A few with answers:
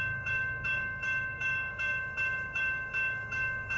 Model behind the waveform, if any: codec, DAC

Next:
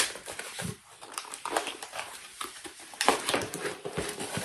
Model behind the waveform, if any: vocoder, BigVGAN v2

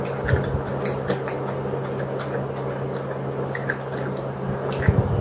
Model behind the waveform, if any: none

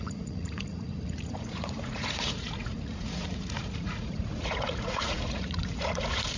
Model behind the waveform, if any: vocoder, Vocos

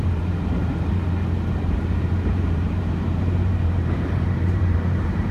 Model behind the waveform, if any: vocoder, BigVGAN v2